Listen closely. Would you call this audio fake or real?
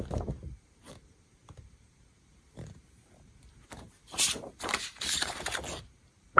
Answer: fake